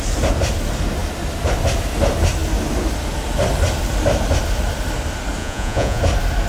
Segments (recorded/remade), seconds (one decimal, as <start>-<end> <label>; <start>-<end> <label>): 0.0-5.4 recorded; 5.4-6.0 remade; 6.0-6.5 recorded